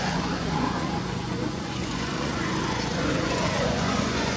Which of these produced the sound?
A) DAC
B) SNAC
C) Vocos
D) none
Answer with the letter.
C